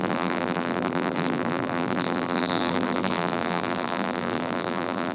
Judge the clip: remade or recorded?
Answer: remade